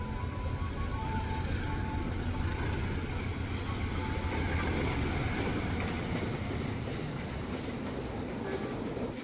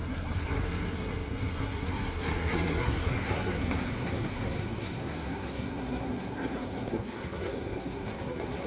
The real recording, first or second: first